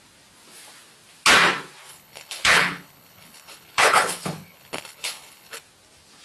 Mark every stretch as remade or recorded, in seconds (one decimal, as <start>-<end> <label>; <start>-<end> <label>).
0.0-1.9 recorded; 1.9-5.6 remade; 5.6-6.2 recorded